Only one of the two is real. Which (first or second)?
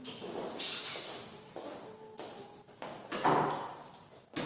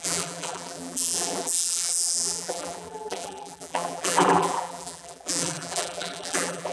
first